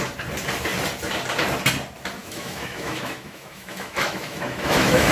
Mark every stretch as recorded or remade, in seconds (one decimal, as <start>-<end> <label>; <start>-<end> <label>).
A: 0.0-2.2 recorded; 2.2-5.1 remade